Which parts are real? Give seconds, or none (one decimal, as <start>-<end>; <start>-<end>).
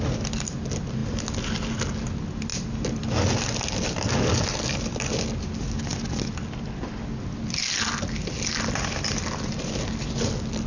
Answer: 0.0-10.7